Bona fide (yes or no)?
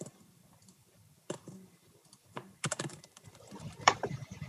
no